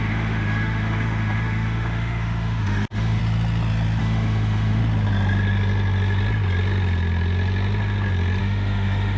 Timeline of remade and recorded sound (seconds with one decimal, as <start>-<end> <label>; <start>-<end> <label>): 0.0-3.2 remade; 3.2-4.0 recorded; 4.0-4.8 remade; 4.8-8.4 recorded; 8.4-9.2 remade